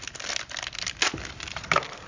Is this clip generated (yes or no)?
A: no